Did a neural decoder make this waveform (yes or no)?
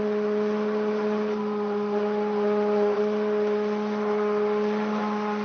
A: no